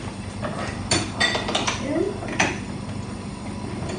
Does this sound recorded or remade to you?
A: recorded